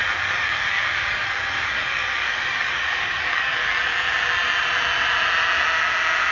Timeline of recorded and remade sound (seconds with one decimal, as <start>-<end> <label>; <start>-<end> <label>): 0.0-3.8 remade; 3.8-6.3 recorded